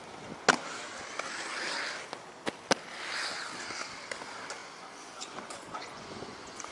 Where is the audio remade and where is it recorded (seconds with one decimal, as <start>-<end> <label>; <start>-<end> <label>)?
0.0-4.6 recorded; 4.6-6.7 remade